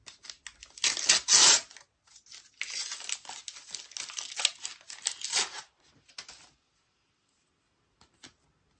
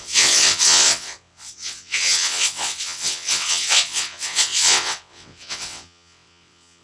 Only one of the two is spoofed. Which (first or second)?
second